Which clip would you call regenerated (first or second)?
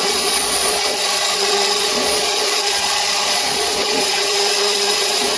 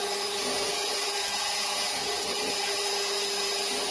first